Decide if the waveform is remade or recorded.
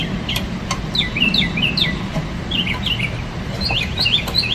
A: recorded